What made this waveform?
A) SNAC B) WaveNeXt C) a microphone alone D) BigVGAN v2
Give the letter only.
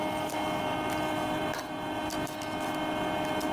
C